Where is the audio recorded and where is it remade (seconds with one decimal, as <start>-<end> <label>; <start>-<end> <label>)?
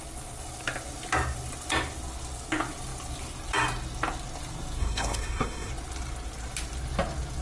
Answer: 0.0-4.8 recorded; 4.8-5.7 remade; 5.7-7.4 recorded